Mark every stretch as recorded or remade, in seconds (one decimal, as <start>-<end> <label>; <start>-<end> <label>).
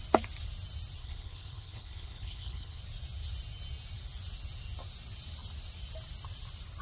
0.0-1.0 recorded; 1.0-2.8 remade; 2.8-6.8 recorded